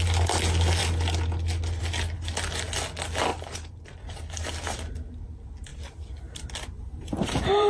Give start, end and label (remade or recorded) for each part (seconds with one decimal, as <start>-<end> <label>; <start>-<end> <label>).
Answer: 0.0-3.3 recorded; 3.3-4.0 remade; 4.0-5.7 recorded; 5.7-7.7 remade